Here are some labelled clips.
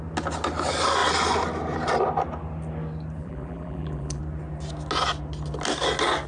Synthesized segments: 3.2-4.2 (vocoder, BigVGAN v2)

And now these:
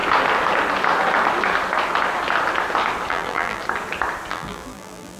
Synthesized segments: 3.1-3.6 (vocoder, BigVGAN v2); 4.3-5.2

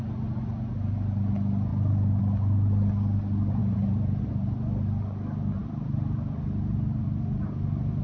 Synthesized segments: 3.6-4.2 (vocoder, BigVGAN v2); 5.6-8.0